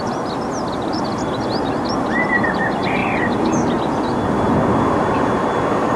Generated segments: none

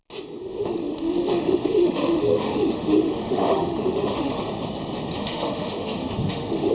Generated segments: 0.4-4.4 (autoencoder, DAC-VAE); 5.2-6.7

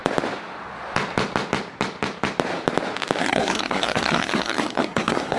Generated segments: 3.2-5.4 (codec, SNAC)